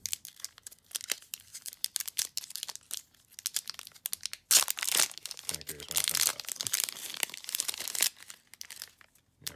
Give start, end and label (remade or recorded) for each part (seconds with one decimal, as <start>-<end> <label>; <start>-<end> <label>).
0.0-9.6 recorded